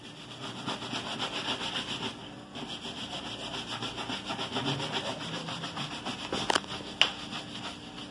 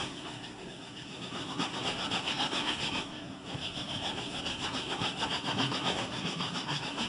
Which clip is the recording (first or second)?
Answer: first